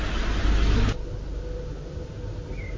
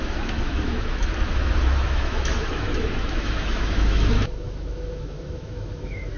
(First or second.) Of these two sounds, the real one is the first